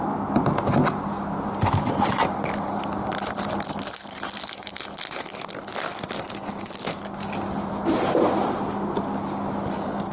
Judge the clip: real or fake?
real